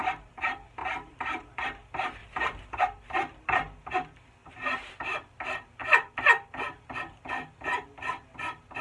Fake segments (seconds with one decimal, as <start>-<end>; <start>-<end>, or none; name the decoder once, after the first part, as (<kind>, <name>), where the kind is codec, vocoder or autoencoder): 0.8-1.6 (vocoder, BigVGAN v2); 2.2-2.8; 4.4-4.9